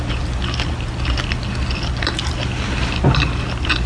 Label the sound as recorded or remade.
recorded